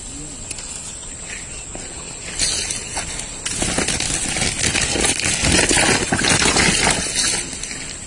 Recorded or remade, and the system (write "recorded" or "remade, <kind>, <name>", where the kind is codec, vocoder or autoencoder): recorded